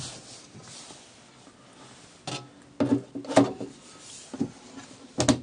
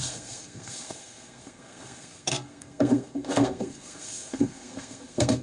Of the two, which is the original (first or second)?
first